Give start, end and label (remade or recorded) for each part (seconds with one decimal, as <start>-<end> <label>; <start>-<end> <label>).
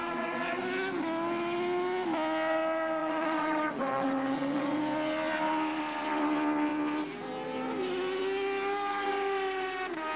0.0-0.6 remade; 0.6-3.0 recorded; 3.0-4.8 remade; 4.8-10.2 recorded